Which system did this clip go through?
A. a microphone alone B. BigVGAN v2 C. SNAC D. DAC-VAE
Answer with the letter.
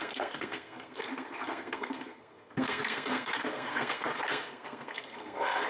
C